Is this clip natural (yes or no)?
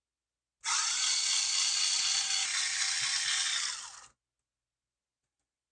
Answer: yes